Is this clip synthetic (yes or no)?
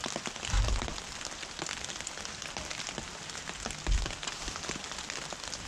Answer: no